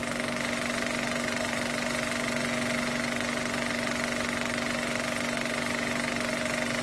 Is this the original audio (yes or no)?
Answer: yes